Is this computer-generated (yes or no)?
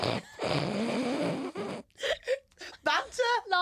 no